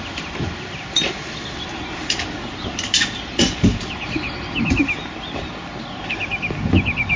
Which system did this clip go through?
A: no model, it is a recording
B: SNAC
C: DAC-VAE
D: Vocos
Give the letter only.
A